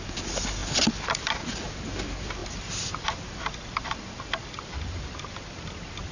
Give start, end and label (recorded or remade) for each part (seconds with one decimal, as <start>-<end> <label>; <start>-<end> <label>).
0.0-0.6 recorded; 0.6-1.3 remade; 1.3-2.4 recorded; 2.4-4.7 remade; 4.7-6.1 recorded